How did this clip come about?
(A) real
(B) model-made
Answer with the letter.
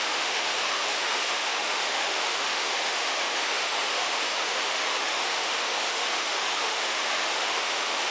B